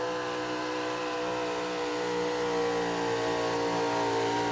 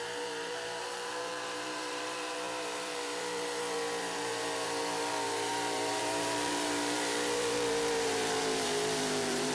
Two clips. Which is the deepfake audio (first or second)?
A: second